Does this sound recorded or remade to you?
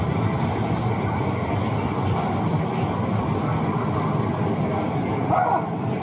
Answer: recorded